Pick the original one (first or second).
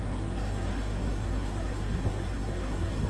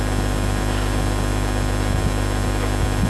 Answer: second